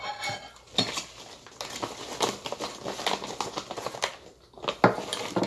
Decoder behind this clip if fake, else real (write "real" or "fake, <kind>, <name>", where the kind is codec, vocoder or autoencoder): real